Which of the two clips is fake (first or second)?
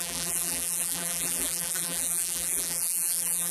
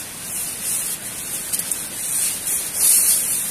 first